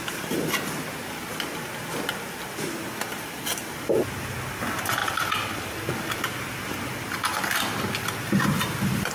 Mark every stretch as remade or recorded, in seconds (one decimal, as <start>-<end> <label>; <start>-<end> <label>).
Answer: 0.0-9.1 recorded